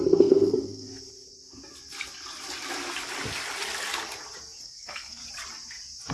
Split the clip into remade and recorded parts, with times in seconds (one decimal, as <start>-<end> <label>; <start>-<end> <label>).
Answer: 0.0-0.9 remade; 0.9-4.6 recorded; 4.6-5.2 remade; 5.2-6.1 recorded